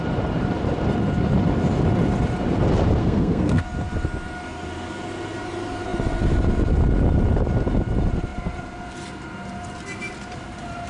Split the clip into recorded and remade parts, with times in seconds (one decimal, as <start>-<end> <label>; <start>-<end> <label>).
0.0-3.0 recorded; 3.0-3.6 remade; 3.6-10.9 recorded